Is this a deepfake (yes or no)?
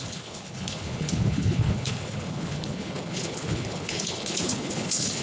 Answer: yes